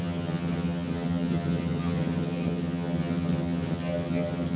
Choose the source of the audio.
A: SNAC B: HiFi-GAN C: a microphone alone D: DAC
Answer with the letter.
B